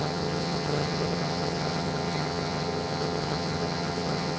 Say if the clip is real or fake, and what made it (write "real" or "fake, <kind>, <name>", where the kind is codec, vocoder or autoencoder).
fake, vocoder, HiFi-GAN